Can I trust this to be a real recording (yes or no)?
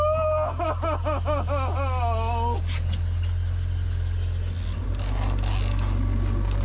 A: yes